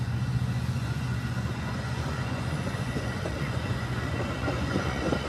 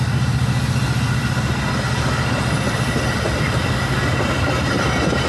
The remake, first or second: first